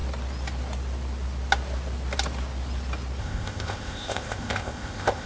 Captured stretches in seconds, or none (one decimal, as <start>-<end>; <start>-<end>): 0.0-3.2